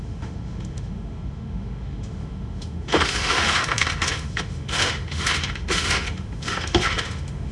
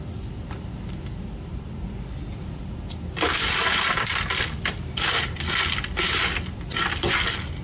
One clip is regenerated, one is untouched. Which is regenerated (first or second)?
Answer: first